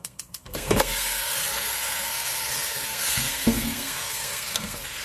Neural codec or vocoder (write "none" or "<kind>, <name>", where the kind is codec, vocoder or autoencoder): codec, SNAC